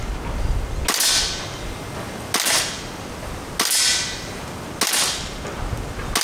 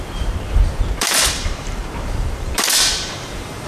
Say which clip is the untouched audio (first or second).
first